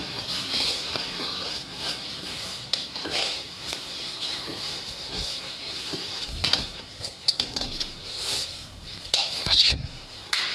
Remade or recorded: remade